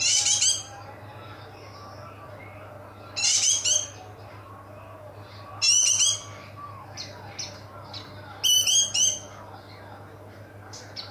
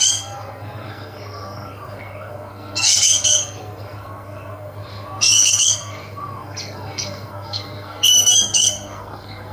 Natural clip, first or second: first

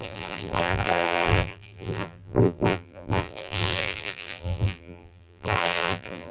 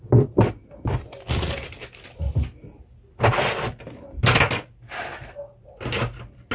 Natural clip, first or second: second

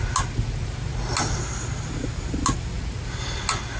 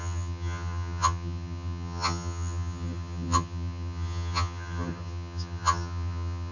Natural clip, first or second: first